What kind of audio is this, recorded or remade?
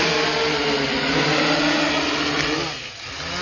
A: recorded